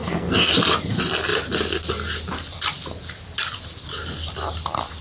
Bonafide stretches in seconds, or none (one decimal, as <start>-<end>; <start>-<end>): 0.5-5.0